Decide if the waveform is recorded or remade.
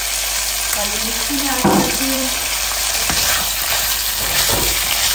remade